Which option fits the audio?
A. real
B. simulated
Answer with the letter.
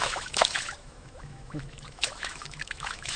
B